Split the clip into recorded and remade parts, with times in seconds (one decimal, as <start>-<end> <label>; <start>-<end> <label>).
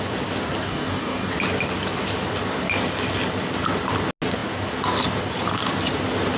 0.0-0.6 recorded; 0.6-1.3 remade; 1.3-6.4 recorded